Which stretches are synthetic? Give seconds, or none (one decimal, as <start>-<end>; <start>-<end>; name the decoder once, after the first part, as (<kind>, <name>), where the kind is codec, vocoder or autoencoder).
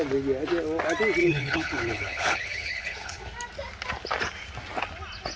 1.2-3.2 (codec, HILCodec)